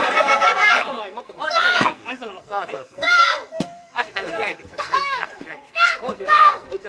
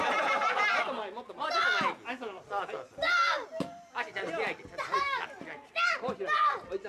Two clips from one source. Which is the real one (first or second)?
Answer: second